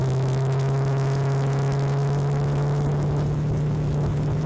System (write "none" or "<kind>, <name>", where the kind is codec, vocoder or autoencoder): autoencoder, DAC-VAE